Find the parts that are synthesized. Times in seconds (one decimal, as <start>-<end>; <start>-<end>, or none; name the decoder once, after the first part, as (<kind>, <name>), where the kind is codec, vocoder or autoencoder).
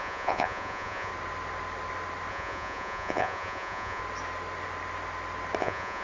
0.0-1.1 (vocoder, Vocos); 2.3-4.0; 5.6-6.0